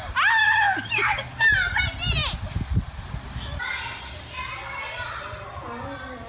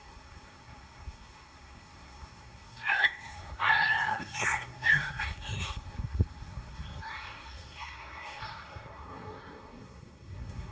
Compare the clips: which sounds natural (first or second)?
first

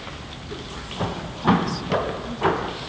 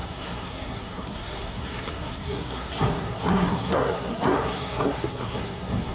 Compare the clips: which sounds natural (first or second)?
first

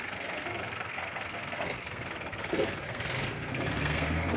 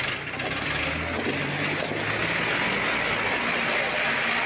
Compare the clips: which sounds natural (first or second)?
second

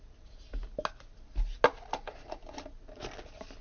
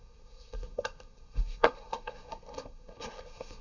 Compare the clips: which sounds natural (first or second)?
first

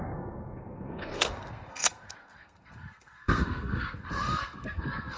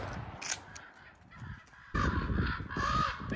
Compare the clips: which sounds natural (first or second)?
second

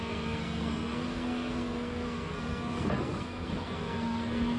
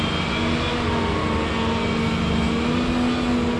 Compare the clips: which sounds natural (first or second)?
second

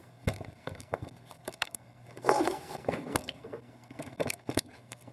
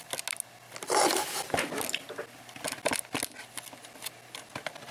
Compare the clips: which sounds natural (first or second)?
second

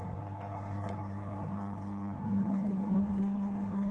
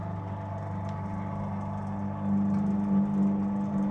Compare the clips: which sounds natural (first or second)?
second